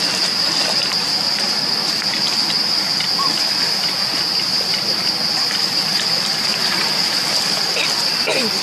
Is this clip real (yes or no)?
no